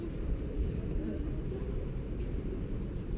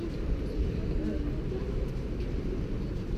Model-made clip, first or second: first